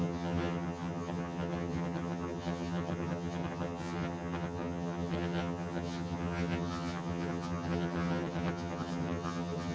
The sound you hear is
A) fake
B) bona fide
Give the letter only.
A